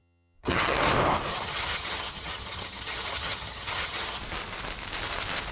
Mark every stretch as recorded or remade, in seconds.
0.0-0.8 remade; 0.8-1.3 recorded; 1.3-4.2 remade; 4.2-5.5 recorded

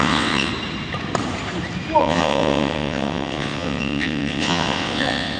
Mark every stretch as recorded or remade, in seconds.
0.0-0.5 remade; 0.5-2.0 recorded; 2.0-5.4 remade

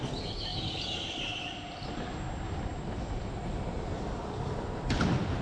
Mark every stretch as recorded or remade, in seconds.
0.0-5.4 recorded

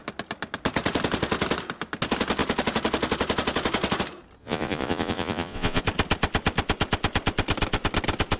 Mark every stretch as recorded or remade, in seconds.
0.0-4.4 recorded; 4.4-5.8 remade; 5.8-8.4 recorded

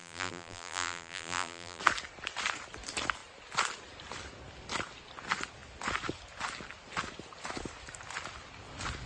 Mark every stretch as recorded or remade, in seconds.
0.0-1.8 remade; 1.8-9.1 recorded

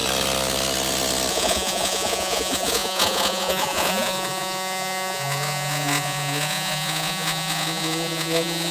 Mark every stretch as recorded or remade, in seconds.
0.0-1.3 recorded; 1.3-8.7 remade